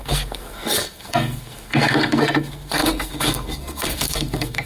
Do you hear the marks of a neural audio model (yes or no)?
yes